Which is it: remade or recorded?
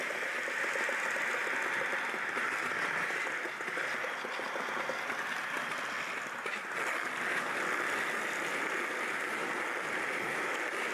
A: recorded